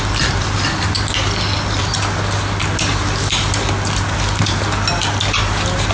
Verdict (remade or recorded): recorded